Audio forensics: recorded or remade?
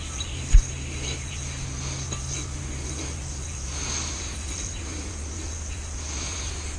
recorded